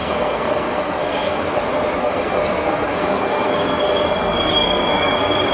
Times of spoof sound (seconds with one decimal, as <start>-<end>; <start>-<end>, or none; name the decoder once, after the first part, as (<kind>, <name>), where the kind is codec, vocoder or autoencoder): 0.0-1.6 (codec, SNAC); 2.0-5.5